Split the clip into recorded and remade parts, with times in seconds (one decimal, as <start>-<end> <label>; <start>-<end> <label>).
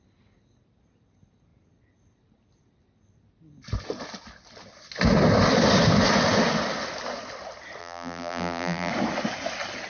0.0-7.8 recorded; 7.8-8.9 remade; 8.9-9.9 recorded